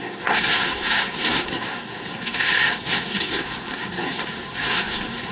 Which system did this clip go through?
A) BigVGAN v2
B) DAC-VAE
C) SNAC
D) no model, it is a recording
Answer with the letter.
C